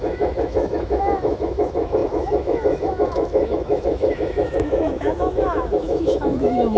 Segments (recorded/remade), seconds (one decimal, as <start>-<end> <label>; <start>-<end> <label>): 0.0-6.8 remade